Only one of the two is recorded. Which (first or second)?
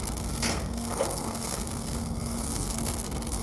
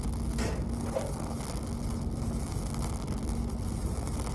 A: second